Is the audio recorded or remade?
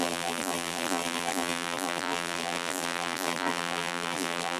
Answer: remade